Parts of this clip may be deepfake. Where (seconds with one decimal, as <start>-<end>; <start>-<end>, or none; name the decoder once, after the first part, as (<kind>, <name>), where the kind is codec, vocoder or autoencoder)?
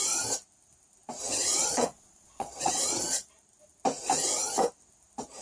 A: 1.6-3.0 (vocoder, Vocos)